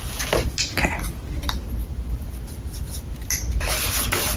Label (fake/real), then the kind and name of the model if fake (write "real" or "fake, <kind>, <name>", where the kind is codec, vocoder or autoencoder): real